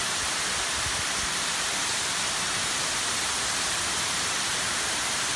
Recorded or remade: remade